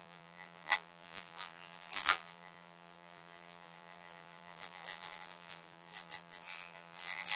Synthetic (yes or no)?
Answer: yes